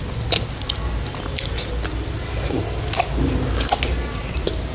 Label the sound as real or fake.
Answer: real